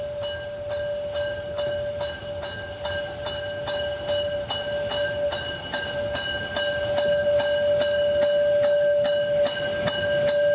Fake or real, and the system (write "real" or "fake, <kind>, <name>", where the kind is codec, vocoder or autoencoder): real